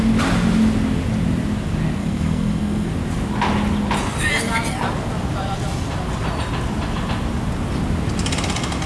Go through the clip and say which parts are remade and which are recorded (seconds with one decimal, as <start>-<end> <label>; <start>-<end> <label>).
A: 0.0-2.0 recorded; 2.0-2.9 remade; 2.9-8.9 recorded